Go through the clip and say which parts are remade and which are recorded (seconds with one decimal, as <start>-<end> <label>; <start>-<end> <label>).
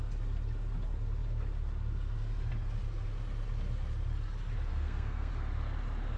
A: 0.0-4.7 recorded; 4.7-5.3 remade; 5.3-6.2 recorded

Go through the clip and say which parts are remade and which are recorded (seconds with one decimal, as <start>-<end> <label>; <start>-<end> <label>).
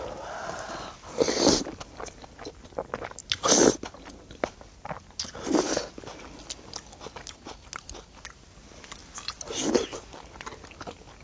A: 0.0-11.2 recorded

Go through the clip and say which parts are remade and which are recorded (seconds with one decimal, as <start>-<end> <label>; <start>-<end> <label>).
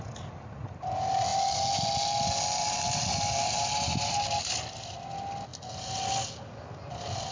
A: 0.0-7.3 recorded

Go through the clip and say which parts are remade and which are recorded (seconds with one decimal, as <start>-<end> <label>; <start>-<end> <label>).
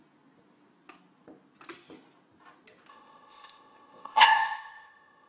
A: 0.0-2.9 recorded; 2.9-5.3 remade